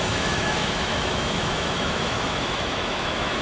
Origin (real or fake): fake